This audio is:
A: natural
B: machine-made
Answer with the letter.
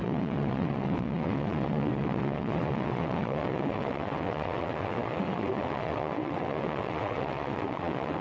B